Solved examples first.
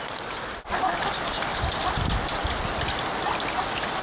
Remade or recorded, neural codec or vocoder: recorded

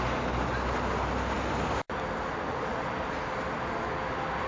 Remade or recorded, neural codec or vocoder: recorded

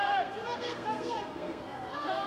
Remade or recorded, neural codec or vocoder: remade, codec, SNAC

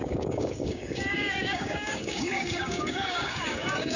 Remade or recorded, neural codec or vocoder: remade, codec, DAC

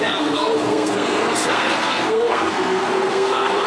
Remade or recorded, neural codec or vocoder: remade, codec, SNAC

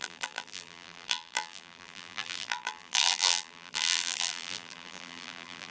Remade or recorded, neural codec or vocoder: remade, vocoder, BigVGAN v2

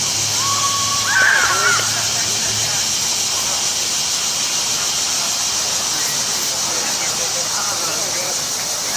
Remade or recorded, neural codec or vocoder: recorded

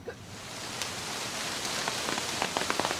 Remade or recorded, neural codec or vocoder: recorded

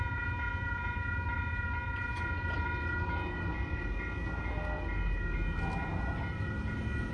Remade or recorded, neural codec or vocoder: recorded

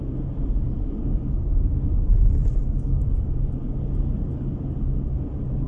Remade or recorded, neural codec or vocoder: recorded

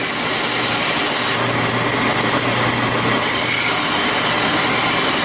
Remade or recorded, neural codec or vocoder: recorded